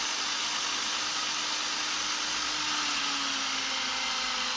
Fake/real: real